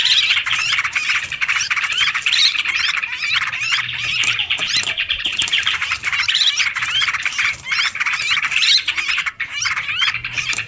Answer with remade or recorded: remade